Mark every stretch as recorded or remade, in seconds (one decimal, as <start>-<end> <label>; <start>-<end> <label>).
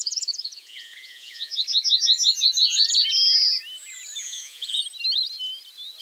0.0-1.5 remade; 1.5-4.2 recorded; 4.2-4.8 remade; 4.8-6.0 recorded